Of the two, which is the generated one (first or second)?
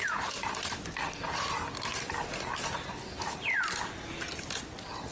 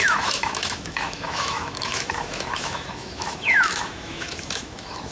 second